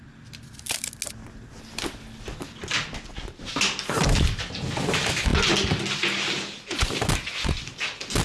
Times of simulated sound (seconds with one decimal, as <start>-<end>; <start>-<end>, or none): none